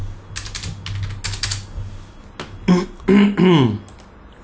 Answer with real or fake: real